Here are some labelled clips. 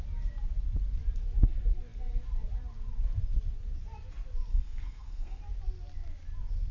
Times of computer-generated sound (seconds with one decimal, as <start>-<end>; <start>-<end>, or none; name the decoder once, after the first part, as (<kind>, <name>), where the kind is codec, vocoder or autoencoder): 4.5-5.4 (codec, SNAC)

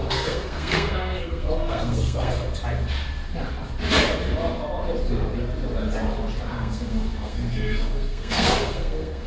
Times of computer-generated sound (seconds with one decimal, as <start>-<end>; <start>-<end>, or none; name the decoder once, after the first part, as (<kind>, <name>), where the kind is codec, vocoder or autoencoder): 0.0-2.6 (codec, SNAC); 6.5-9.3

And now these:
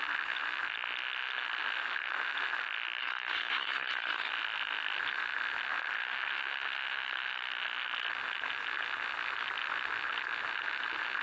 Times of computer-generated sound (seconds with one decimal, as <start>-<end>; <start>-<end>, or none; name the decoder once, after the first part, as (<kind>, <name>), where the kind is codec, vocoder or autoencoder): 3.0-4.3 (codec, SNAC)

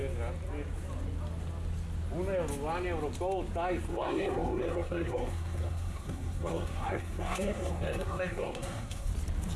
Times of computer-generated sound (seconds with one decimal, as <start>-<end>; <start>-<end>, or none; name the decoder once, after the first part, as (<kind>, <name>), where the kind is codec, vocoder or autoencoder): 3.9-9.1 (codec, SNAC)